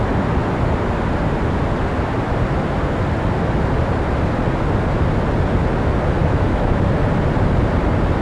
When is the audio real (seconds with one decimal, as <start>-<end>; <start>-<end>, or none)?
0.0-6.2; 6.8-8.2